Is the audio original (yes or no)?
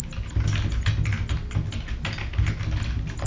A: yes